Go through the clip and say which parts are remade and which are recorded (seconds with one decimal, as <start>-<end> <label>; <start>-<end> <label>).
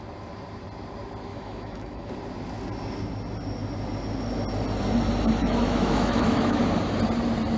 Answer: 0.0-1.3 recorded; 1.3-2.1 remade; 2.1-5.4 recorded; 5.4-6.6 remade; 6.6-7.6 recorded